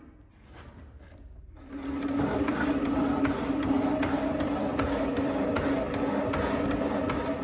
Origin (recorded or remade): recorded